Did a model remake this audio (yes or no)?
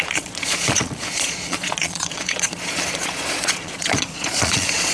yes